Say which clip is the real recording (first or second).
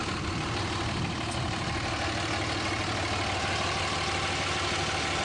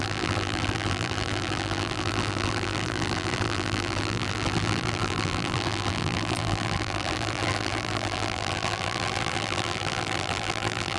first